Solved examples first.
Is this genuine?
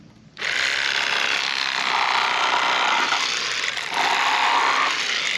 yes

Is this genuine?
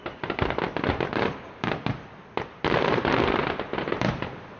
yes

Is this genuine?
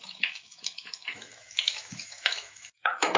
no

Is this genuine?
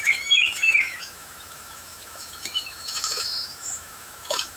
no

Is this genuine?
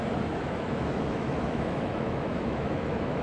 no